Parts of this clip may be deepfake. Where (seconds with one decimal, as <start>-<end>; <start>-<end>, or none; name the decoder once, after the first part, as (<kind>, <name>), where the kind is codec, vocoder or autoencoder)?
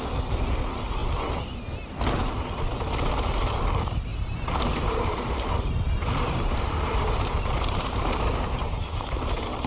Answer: 4.1-8.9 (vocoder, BigVGAN v2)